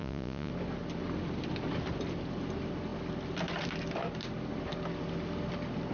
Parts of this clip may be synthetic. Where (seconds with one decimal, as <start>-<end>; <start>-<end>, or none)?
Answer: 0.0-0.5